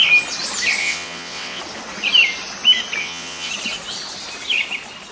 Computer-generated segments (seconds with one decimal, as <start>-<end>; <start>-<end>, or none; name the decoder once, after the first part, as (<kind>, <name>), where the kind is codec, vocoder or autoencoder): 0.8-1.6 (vocoder, WaveNeXt); 3.0-3.5

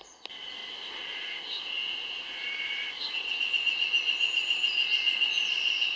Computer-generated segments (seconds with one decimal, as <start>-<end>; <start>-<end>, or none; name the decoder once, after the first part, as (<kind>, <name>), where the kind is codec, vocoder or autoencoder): 1.8-2.9 (vocoder, BigVGAN v2)